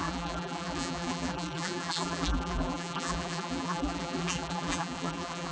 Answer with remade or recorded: remade